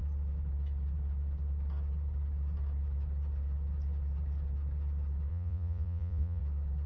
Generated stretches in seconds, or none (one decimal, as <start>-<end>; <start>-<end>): 5.3-6.4